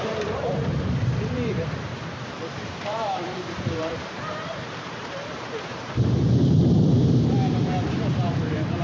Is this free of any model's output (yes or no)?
no